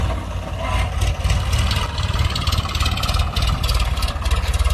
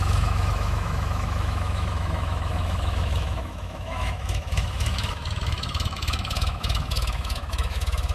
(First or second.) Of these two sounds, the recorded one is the first